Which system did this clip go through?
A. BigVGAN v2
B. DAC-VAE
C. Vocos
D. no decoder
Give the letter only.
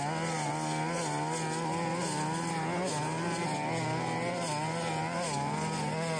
D